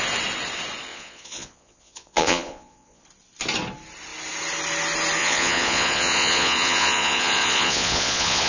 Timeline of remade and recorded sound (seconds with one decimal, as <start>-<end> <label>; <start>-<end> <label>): 0.0-0.9 recorded; 0.9-3.0 remade; 3.0-5.2 recorded; 5.2-8.5 remade